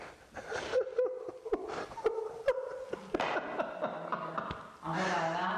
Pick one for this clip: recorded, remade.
recorded